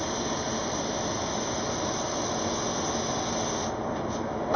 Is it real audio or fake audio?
real